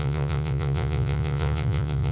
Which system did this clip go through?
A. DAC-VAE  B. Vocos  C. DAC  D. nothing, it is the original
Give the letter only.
B